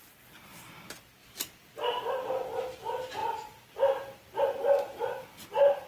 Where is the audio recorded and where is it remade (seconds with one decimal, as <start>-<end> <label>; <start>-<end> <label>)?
0.0-5.9 recorded